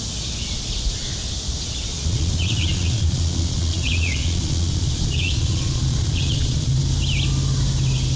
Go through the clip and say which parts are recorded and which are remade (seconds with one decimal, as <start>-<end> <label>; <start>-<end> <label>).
0.0-1.9 recorded; 1.9-6.8 remade; 6.8-8.2 recorded